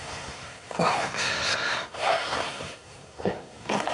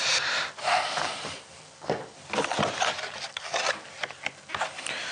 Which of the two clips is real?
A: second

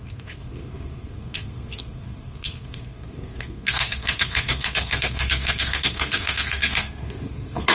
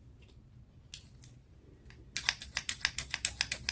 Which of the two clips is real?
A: second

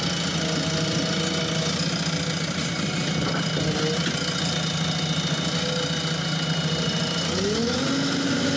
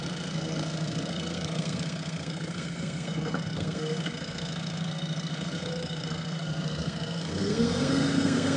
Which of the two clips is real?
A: first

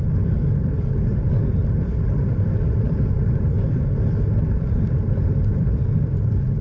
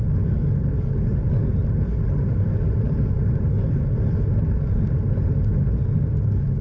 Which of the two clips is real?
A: second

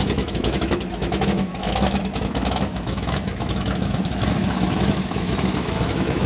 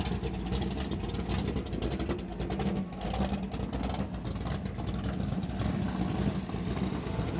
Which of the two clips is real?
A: second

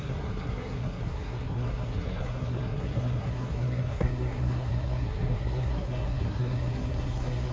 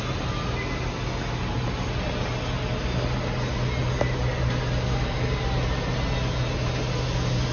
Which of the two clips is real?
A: second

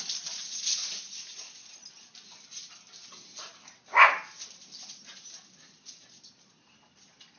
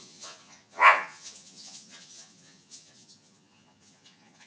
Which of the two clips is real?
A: first